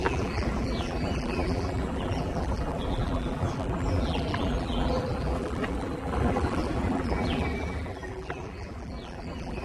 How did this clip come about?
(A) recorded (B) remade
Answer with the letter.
B